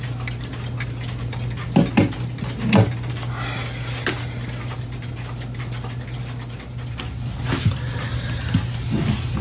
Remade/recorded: recorded